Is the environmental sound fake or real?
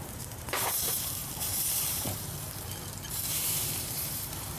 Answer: fake